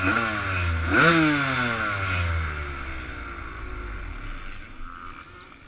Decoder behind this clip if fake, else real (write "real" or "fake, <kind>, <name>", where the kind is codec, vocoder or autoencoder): real